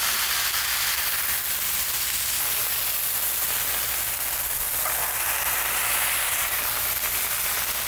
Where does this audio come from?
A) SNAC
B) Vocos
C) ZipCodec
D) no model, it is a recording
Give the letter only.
D